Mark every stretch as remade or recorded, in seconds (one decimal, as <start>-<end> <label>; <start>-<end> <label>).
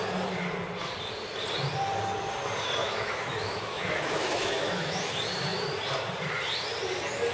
0.0-2.8 recorded; 2.8-5.1 remade; 5.1-7.3 recorded